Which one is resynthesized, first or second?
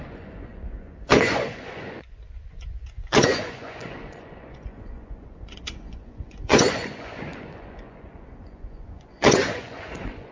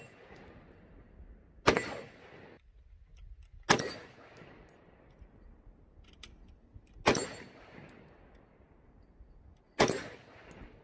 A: first